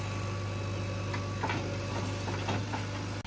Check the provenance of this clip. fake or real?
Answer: real